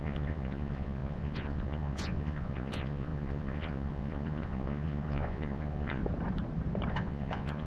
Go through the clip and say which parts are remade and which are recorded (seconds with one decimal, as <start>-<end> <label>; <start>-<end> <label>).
0.0-6.0 remade; 6.0-6.9 recorded; 6.9-7.7 remade